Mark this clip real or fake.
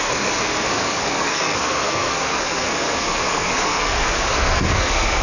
fake